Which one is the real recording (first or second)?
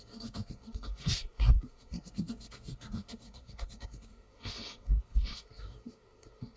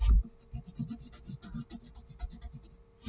second